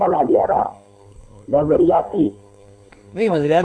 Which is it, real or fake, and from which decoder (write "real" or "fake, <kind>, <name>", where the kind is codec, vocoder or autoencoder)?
fake, codec, SNAC